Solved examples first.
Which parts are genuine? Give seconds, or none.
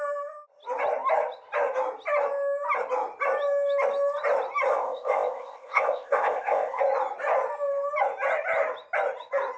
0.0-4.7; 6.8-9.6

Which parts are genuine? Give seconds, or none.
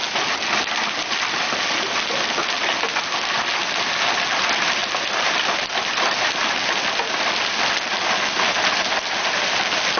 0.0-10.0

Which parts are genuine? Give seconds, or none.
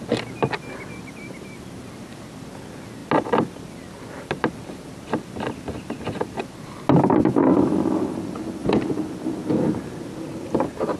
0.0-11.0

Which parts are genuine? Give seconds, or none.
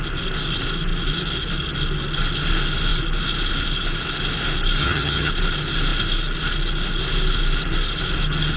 0.0-4.8; 5.3-8.6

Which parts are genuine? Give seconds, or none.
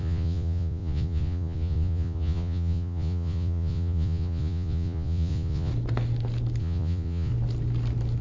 5.7-6.6; 7.3-8.2